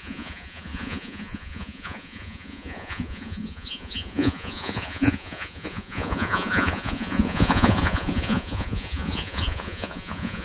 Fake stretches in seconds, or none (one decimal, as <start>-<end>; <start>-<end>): 0.0-10.4